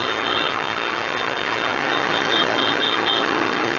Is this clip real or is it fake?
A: fake